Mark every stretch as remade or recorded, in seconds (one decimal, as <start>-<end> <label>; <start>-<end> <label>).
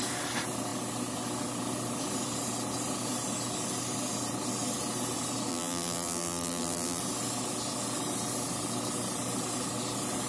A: 0.0-5.5 recorded; 5.5-7.0 remade; 7.0-10.3 recorded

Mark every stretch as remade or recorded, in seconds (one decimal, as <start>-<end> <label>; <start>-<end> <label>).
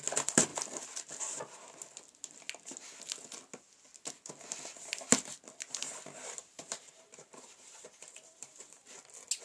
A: 0.0-6.4 recorded; 6.4-8.9 remade; 8.9-9.4 recorded